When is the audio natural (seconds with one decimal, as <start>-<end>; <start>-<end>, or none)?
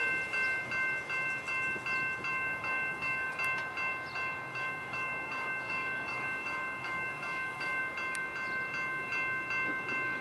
0.0-2.3; 3.3-4.5; 7.8-10.2